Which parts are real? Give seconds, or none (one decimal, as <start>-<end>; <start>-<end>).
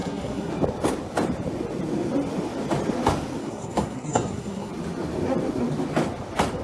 0.5-3.4; 4.7-6.6